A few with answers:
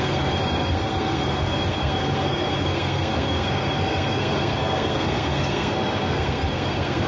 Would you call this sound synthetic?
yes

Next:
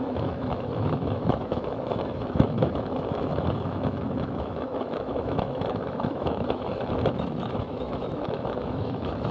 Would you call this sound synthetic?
yes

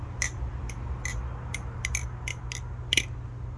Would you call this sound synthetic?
no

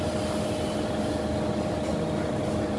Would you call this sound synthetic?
no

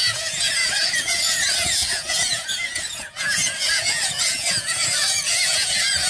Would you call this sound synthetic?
yes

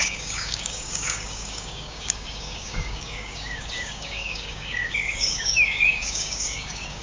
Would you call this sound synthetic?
yes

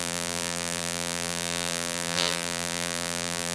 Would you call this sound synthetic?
yes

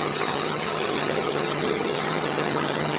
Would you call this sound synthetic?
yes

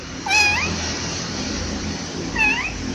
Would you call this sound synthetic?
yes